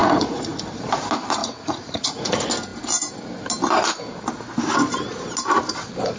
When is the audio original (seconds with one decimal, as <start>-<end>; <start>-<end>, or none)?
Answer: 0.6-1.4; 2.3-6.2